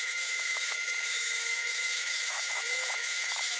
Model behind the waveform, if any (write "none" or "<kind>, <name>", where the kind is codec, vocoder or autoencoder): autoencoder, DAC-VAE